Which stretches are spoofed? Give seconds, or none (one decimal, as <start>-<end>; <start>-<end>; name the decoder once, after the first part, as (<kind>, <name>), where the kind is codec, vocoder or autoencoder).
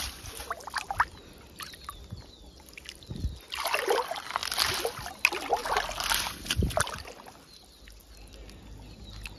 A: none